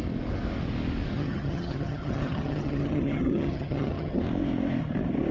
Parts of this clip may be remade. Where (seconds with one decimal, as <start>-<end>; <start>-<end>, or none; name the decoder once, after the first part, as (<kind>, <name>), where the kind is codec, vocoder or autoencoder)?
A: 1.1-4.2 (vocoder, HiFi-GAN)